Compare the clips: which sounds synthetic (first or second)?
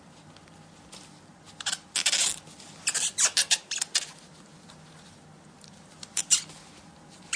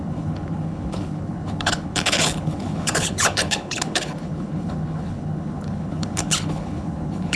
second